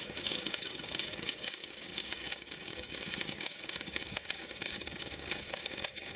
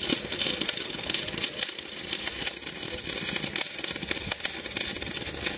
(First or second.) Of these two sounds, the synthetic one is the first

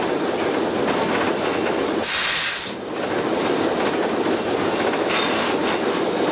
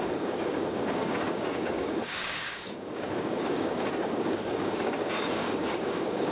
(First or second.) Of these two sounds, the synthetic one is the second